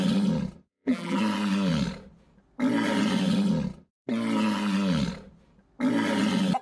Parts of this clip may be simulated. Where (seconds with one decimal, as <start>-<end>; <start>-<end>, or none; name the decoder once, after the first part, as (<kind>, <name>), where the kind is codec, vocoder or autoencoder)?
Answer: 0.7-1.2 (vocoder, BigVGAN v2)